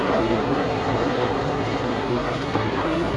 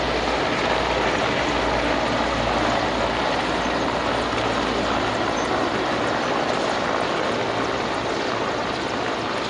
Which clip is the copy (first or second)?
first